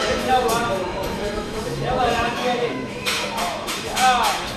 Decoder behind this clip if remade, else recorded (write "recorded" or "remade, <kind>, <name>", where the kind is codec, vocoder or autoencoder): remade, autoencoder, DAC-VAE